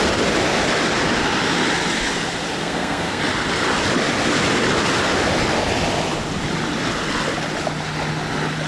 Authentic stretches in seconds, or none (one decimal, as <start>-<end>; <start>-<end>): 0.0-2.6; 3.2-8.7